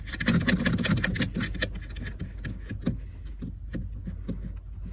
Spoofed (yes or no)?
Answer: no